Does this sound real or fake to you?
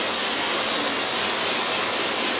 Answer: real